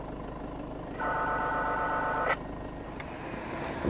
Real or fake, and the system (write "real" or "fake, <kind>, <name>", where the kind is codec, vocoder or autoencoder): real